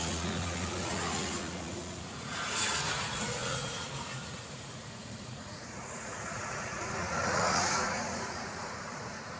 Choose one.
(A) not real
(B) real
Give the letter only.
A